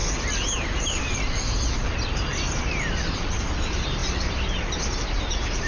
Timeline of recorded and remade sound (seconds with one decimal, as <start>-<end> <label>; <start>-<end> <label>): 0.0-0.8 recorded; 0.8-2.3 remade; 2.3-3.1 recorded; 3.1-5.7 remade